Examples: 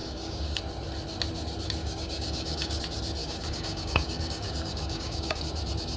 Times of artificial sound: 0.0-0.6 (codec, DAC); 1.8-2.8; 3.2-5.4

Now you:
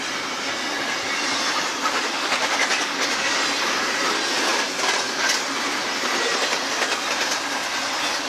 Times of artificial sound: 1.8-3.4 (codec, DAC)

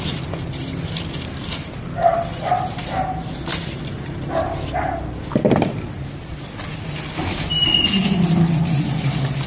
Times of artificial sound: none

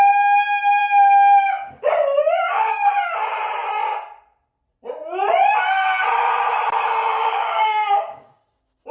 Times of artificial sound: 0.8-2.9 (codec, DAC); 7.1-8.4

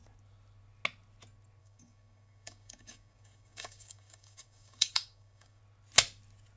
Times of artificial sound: 1.6-5.6 (codec, DAC)

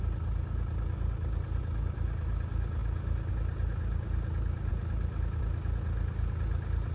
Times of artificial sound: none

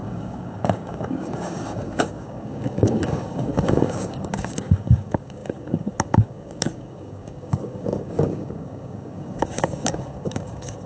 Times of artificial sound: 0.0-10.9 (codec, DAC)